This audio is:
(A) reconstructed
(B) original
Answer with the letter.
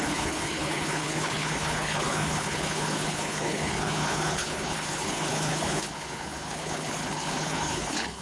A